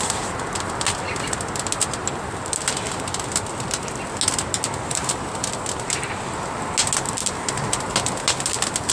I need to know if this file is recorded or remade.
recorded